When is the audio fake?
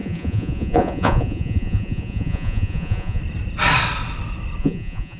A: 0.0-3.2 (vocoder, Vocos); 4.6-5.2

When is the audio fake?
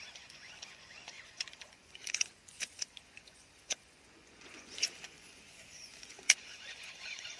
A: 0.0-7.4 (vocoder, Vocos)